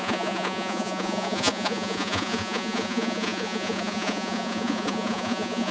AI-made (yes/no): yes